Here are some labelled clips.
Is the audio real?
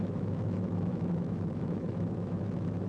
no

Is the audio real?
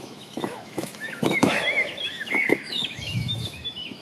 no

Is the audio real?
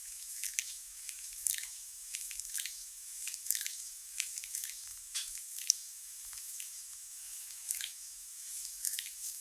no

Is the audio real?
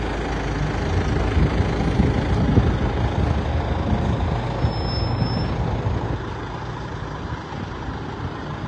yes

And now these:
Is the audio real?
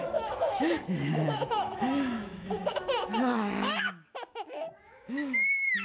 no